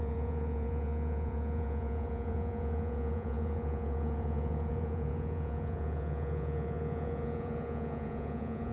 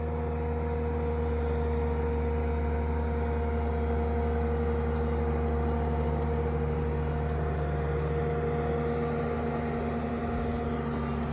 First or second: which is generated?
first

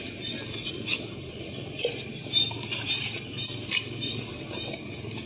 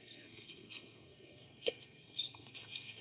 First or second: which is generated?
second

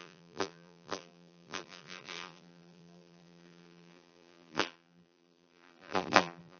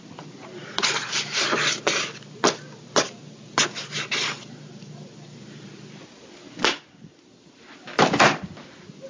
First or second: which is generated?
first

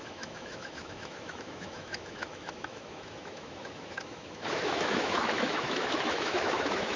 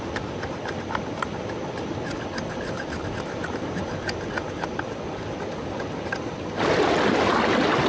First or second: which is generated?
first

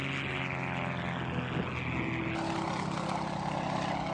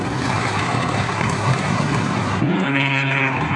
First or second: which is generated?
second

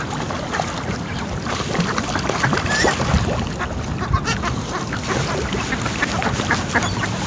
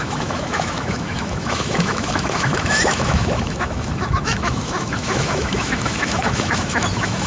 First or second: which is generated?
second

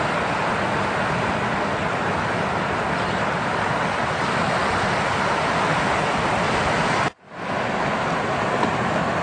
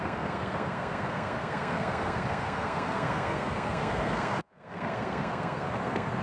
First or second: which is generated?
second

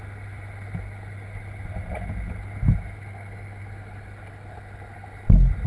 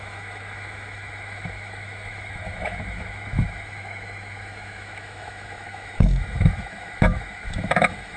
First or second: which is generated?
second